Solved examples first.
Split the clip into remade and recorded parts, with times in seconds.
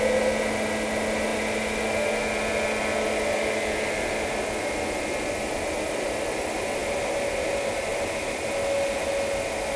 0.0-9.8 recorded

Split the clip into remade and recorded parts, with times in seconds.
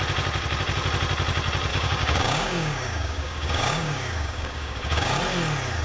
0.0-1.7 recorded; 1.7-5.2 remade; 5.2-5.8 recorded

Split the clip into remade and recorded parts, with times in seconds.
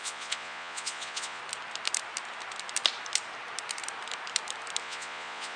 0.0-1.4 remade; 1.4-4.8 recorded; 4.8-5.6 remade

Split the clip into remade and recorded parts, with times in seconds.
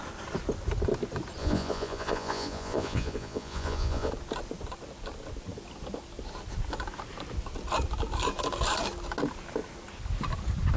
0.0-1.4 recorded; 1.4-4.1 remade; 4.1-10.8 recorded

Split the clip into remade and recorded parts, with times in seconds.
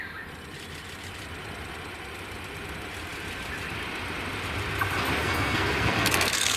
0.0-5.2 recorded; 5.2-6.6 remade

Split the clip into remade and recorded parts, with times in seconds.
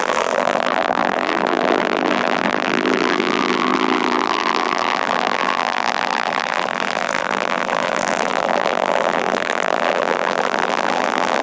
0.0-11.4 remade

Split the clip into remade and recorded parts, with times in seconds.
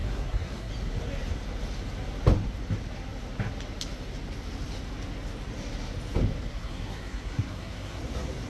0.0-0.7 remade; 0.7-6.5 recorded; 6.5-8.0 remade; 8.0-8.5 recorded